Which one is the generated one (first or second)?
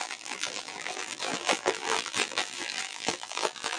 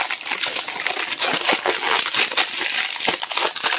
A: first